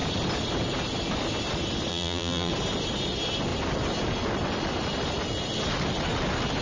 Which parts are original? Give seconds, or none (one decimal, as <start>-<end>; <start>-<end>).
0.0-1.9; 2.5-6.6